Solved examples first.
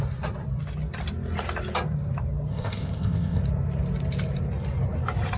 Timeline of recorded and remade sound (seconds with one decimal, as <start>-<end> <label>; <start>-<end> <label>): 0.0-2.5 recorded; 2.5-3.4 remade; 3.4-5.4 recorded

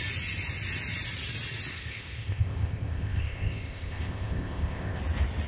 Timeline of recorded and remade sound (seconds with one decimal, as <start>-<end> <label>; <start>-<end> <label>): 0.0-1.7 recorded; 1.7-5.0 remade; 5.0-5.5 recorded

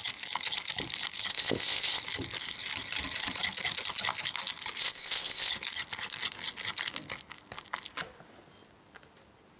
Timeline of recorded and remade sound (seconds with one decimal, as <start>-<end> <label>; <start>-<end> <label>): 0.0-1.3 recorded; 1.3-2.0 remade; 2.0-4.8 recorded; 4.8-5.5 remade; 5.5-9.6 recorded

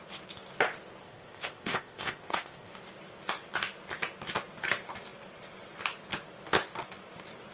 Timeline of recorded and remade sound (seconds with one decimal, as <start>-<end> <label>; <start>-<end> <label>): 0.0-1.0 recorded; 1.0-2.7 remade; 2.7-7.5 recorded

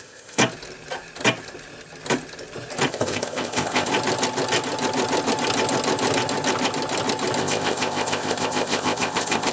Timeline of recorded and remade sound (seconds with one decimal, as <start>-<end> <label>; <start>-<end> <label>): 0.0-0.4 remade; 0.4-2.9 recorded; 2.9-3.9 remade; 3.9-7.4 recorded; 7.4-9.5 remade